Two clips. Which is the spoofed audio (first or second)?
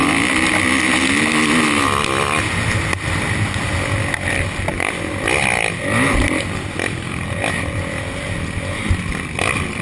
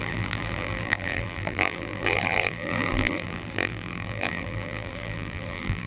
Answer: second